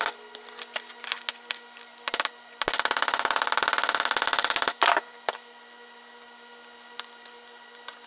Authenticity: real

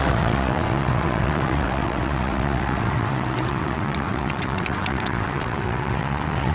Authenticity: fake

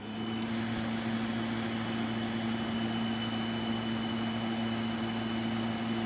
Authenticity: real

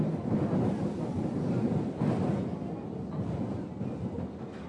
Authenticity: real